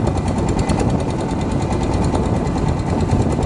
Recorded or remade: recorded